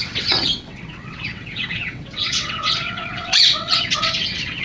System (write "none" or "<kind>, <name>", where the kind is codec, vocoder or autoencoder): vocoder, WaveNeXt